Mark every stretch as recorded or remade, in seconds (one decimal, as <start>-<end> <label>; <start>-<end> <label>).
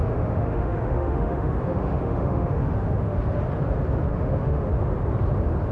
0.0-3.4 remade; 3.4-4.1 recorded; 4.1-4.7 remade; 4.7-5.7 recorded